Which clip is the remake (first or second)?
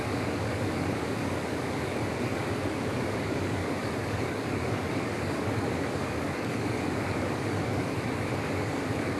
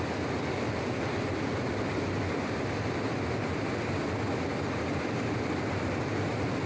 first